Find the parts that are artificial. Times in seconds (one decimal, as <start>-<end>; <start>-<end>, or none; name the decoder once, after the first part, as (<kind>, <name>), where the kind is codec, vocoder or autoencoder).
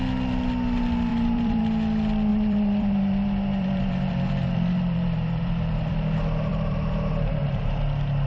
1.1-1.6 (vocoder, BigVGAN v2); 2.3-5.9; 6.5-7.8